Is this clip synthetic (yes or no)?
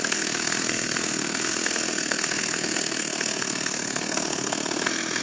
yes